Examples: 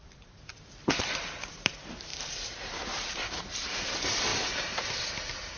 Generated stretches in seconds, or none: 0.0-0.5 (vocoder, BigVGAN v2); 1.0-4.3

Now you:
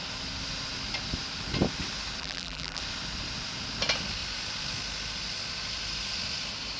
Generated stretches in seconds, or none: 2.2-2.8 (vocoder, BigVGAN v2)

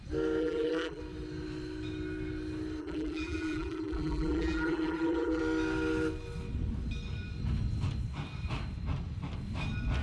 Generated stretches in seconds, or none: 0.4-1.0 (vocoder, BigVGAN v2); 2.8-5.4

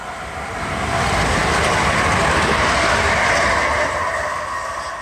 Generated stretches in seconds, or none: none

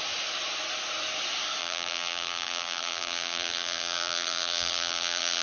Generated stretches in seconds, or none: 1.6-5.4 (vocoder, BigVGAN v2)

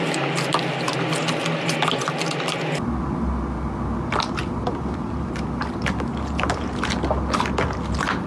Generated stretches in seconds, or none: none

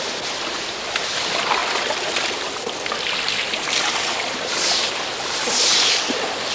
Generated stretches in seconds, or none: 0.0-6.5 (vocoder, BigVGAN v2)